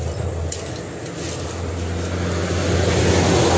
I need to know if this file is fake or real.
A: real